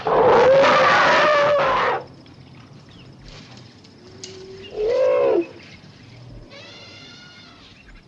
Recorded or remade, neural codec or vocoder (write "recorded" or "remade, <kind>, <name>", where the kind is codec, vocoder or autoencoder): recorded